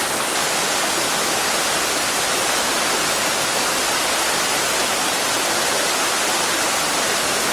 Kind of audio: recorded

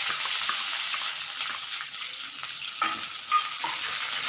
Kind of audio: recorded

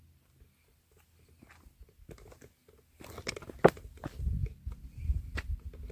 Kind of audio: recorded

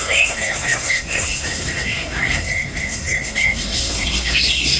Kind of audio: remade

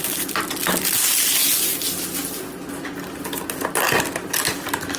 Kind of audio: recorded